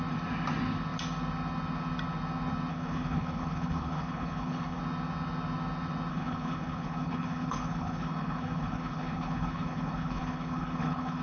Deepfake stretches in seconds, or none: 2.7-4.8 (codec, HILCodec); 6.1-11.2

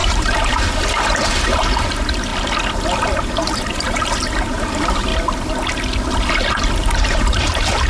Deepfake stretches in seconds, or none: 0.0-2.3 (vocoder, BigVGAN v2); 3.2-5.1; 6.7-7.9

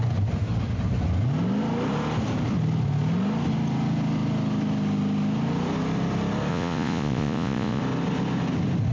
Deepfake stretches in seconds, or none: 6.5-7.8 (vocoder, Vocos)

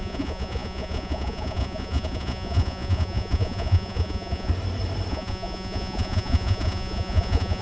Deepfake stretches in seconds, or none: 0.0-4.5 (vocoder, Vocos); 5.1-7.6

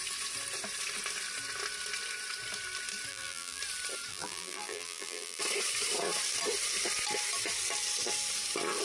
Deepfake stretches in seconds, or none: 3.1-3.6 (vocoder, BigVGAN v2); 4.1-5.4

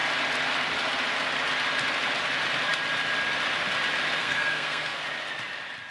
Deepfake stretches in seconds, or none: 4.2-5.0 (codec, SNAC)

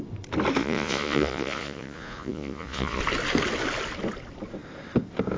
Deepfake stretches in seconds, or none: 0.6-3.0 (vocoder, Vocos)

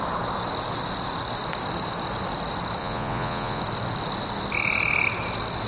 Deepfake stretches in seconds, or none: 2.8-3.6 (vocoder, Vocos)